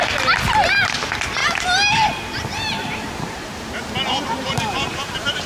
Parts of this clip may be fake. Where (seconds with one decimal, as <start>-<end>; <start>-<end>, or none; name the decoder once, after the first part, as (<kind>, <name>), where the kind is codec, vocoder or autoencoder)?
2.5-5.5 (vocoder, BigVGAN v2)

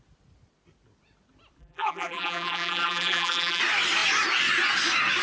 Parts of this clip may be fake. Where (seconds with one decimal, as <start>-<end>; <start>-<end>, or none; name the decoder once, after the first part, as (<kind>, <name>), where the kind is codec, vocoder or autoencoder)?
1.6-3.6 (vocoder, BigVGAN v2)